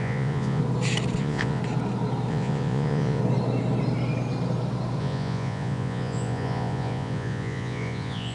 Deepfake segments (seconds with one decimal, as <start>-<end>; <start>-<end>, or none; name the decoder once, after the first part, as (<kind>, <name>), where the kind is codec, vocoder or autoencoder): 0.0-0.6 (vocoder, Vocos); 1.2-1.6; 2.3-3.2; 5.0-8.3